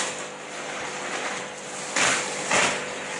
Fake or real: real